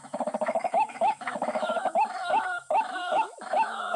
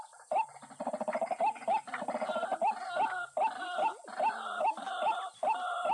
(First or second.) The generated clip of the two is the first